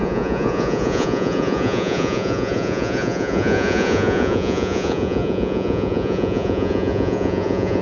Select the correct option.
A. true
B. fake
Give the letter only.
B